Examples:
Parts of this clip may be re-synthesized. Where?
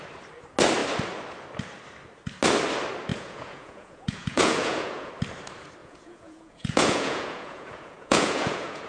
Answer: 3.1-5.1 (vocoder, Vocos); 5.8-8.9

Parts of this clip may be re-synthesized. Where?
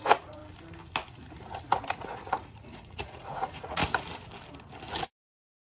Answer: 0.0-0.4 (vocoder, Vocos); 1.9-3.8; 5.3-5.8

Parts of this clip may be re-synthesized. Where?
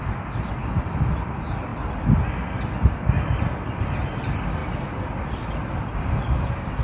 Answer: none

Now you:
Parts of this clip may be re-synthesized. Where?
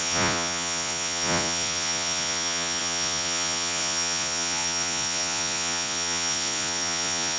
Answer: 0.0-7.4 (vocoder, Vocos)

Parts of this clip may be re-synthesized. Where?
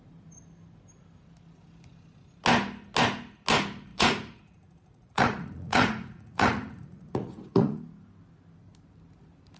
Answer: 3.9-7.8 (vocoder, Vocos)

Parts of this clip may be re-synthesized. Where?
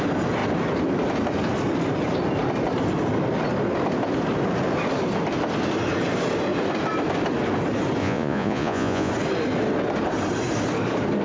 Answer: 8.0-9.1 (vocoder, Vocos)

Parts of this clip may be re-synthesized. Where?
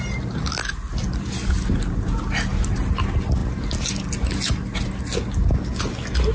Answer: none